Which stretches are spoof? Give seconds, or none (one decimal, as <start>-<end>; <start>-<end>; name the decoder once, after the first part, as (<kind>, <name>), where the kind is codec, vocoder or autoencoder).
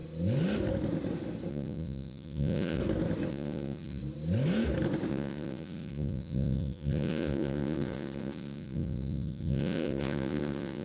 1.5-2.8 (vocoder, Vocos); 3.3-4.0; 5.1-10.8